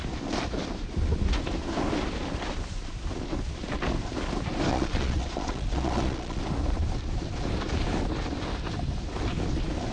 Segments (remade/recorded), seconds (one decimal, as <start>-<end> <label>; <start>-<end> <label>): 0.0-4.7 recorded; 4.7-6.4 remade; 6.4-9.9 recorded

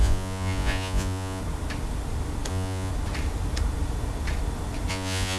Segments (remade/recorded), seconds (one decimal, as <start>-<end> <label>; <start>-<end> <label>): 0.0-1.4 remade; 1.4-2.5 recorded; 2.5-2.9 remade; 2.9-4.9 recorded; 4.9-5.4 remade

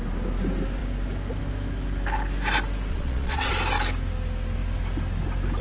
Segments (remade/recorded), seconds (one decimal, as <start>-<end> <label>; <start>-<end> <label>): 0.0-2.9 recorded; 2.9-3.5 remade; 3.5-5.6 recorded